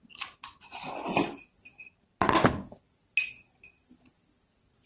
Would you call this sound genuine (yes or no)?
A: yes